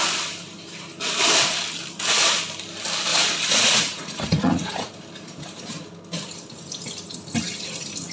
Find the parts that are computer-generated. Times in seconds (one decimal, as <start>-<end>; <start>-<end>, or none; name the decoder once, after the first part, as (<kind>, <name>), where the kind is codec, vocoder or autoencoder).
3.1-4.9 (vocoder, Vocos)